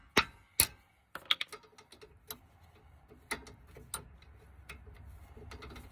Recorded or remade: recorded